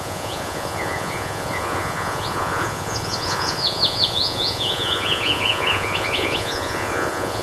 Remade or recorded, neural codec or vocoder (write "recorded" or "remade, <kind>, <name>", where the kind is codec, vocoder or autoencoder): remade, vocoder, Vocos